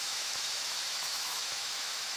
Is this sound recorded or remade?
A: remade